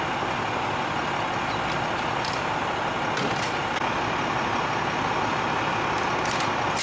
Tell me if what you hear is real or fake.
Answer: real